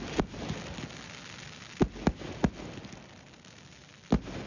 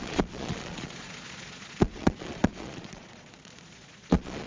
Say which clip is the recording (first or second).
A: first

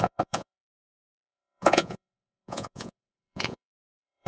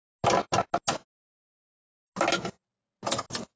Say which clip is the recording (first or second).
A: second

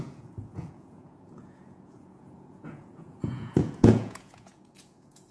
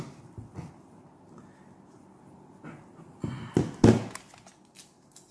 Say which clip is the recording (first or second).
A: second